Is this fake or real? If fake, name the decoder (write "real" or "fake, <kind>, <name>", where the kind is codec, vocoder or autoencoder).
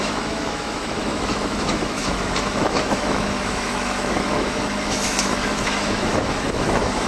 fake, autoencoder, DAC-VAE